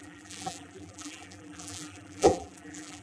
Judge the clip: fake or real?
fake